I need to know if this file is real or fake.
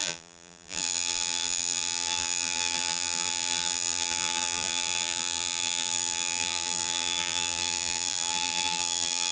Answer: fake